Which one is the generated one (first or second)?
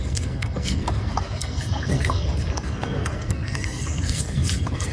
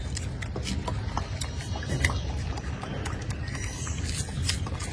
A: first